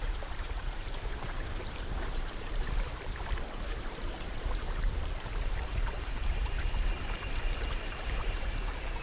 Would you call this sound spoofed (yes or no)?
yes